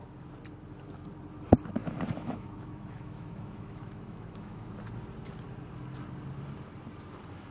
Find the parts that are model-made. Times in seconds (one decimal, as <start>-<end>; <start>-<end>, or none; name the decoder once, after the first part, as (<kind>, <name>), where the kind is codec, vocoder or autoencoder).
1.8-4.7 (autoencoder, DAC-VAE)